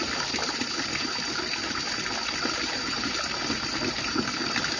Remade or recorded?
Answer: recorded